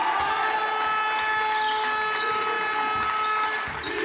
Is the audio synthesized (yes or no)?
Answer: no